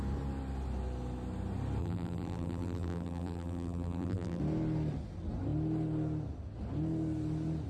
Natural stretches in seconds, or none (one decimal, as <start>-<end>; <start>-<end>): 0.0-1.8; 4.4-7.7